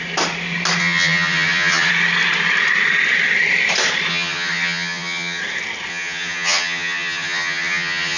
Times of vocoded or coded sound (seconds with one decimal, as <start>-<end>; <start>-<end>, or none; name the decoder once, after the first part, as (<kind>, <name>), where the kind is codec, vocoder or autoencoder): 0.8-1.9 (vocoder, HiFi-GAN); 4.1-5.4; 5.9-8.2